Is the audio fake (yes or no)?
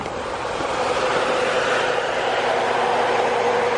no